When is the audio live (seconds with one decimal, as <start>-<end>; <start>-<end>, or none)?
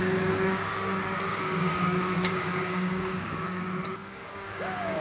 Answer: 0.7-1.3; 3.6-4.0